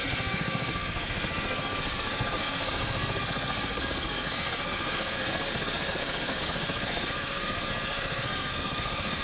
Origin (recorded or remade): remade